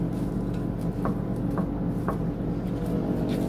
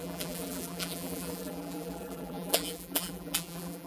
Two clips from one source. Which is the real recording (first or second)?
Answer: first